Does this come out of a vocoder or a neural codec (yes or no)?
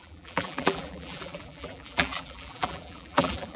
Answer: yes